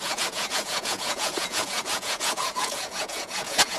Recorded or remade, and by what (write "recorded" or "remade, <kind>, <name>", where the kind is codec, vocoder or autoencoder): remade, vocoder, Vocos